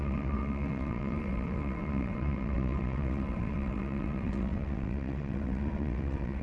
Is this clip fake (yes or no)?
yes